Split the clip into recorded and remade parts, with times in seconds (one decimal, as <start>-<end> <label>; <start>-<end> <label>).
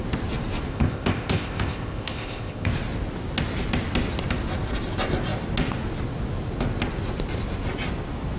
0.0-0.7 recorded; 0.7-2.7 remade; 2.7-8.4 recorded